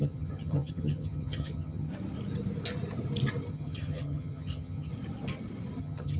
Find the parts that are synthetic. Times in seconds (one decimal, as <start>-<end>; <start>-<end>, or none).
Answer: 0.0-1.9; 3.5-4.9; 5.8-6.2